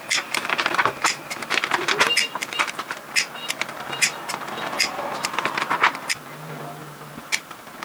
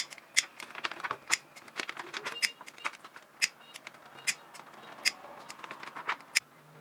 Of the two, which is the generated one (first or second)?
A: first